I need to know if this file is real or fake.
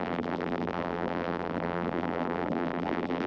fake